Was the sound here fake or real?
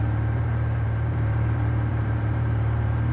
fake